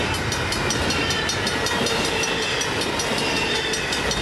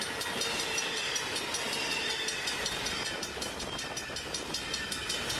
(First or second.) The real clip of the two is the first